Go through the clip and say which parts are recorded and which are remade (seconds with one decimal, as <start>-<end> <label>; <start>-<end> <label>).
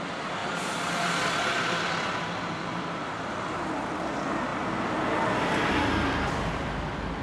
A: 0.0-0.4 recorded; 0.4-3.7 remade; 3.7-7.2 recorded